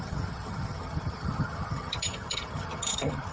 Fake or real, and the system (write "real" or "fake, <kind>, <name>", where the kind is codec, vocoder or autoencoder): fake, vocoder, HiFi-GAN